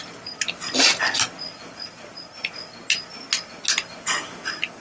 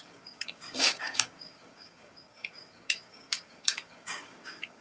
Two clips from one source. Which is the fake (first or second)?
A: second